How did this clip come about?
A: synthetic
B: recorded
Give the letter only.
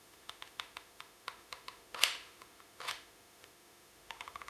A